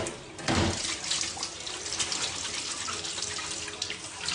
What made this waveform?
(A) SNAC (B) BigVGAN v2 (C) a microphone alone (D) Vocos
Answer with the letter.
C